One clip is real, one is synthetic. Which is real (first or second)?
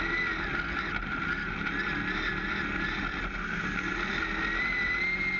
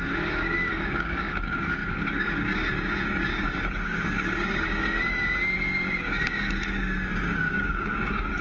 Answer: first